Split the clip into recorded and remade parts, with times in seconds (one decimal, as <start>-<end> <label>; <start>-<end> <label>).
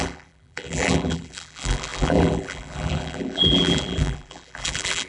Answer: 0.0-5.1 remade